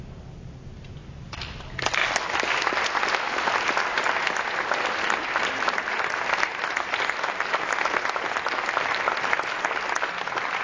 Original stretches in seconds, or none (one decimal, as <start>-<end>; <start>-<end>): 0.0-10.6